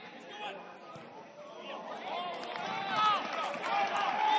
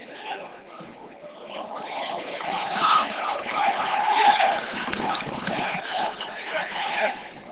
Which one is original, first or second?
first